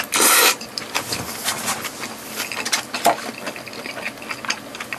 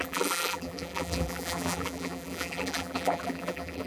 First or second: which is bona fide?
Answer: first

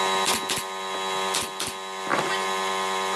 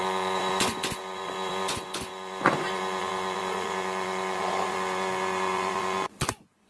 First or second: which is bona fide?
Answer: first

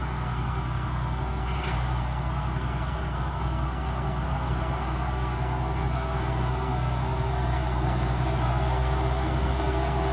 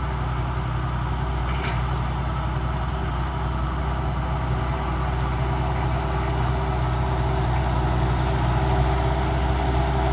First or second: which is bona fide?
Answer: second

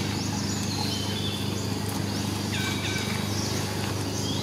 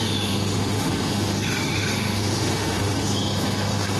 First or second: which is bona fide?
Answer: first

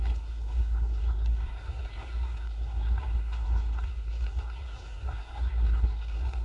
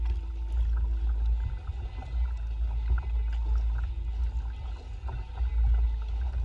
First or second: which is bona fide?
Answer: second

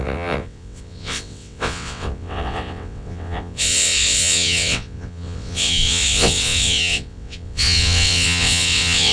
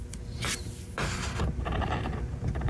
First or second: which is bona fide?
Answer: second